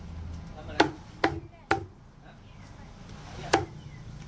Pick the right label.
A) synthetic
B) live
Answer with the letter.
B